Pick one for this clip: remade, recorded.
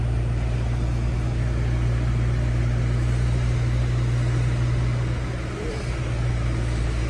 recorded